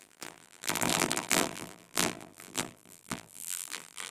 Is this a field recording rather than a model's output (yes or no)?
no